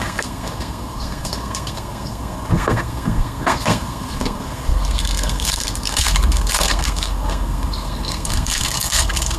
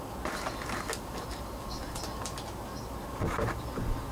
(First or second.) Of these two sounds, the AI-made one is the first